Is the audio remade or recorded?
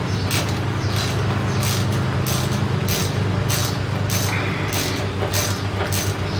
recorded